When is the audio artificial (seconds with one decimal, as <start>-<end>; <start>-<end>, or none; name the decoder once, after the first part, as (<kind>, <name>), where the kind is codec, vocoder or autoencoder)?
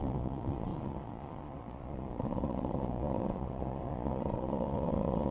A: 0.0-5.3 (vocoder, Vocos)